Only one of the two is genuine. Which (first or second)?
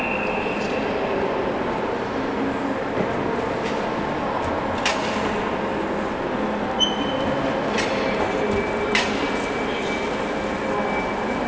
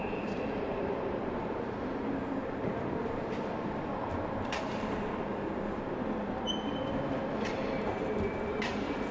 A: first